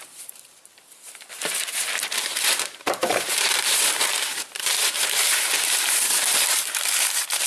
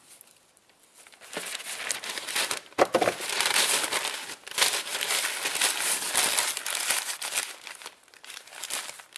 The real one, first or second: second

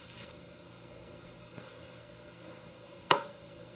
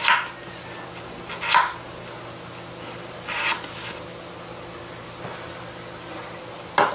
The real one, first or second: second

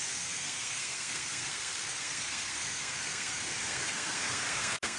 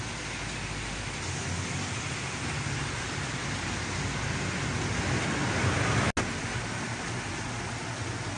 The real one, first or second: second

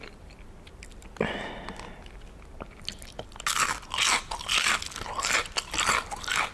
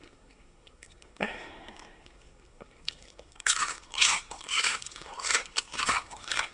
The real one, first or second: first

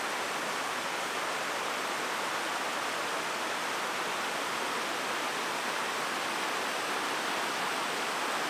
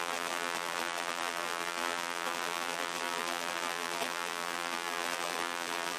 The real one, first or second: first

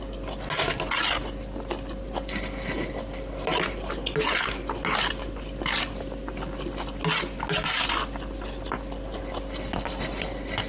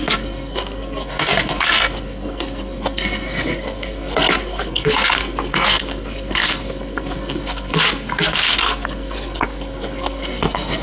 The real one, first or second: first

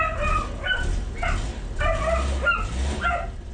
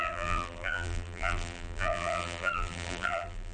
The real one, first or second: first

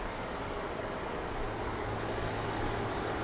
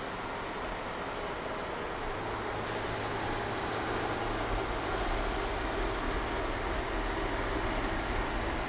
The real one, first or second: second